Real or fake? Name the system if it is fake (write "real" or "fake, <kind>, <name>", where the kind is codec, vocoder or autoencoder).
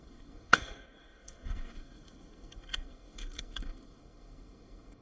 fake, codec, SNAC